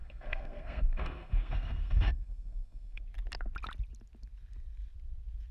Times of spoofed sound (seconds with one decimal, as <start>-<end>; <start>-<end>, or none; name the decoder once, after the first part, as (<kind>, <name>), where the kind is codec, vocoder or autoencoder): 0.0-3.0 (codec, SNAC)